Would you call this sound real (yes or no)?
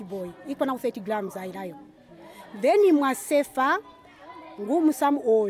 yes